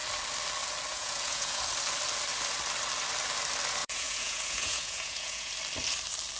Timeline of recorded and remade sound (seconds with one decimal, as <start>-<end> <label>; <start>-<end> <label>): 0.0-0.9 recorded; 0.9-1.6 remade; 1.6-3.8 recorded; 3.8-5.5 remade; 5.5-6.4 recorded